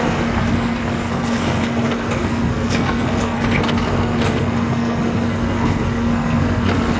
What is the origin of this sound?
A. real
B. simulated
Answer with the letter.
B